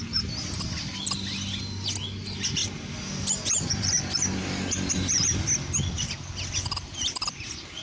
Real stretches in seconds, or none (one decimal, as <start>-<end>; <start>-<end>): 0.0-7.8